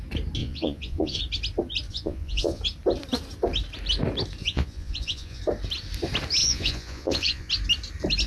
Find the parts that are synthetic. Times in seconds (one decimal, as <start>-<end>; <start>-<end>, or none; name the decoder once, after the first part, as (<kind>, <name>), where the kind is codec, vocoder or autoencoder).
0.4-1.2 (vocoder, Vocos); 1.9-2.6; 4.4-5.4; 6.4-7.5